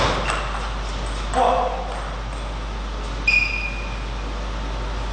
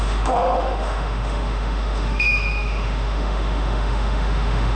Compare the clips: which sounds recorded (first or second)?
first